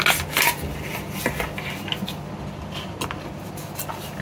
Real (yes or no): yes